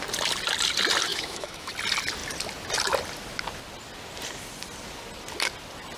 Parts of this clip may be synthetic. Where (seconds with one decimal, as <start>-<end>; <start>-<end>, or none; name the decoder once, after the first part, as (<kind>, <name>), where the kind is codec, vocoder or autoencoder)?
1.1-1.7 (autoencoder, DAC-VAE)